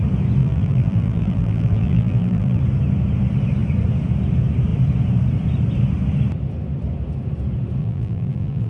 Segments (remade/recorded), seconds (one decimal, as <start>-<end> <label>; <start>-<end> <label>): 0.0-0.4 recorded; 0.4-2.6 remade; 2.6-7.8 recorded; 7.8-8.7 remade